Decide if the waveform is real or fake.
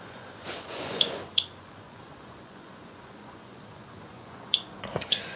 fake